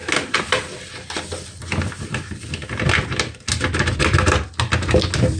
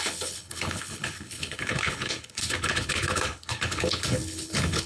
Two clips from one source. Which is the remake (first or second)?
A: second